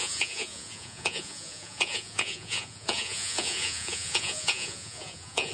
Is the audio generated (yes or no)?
yes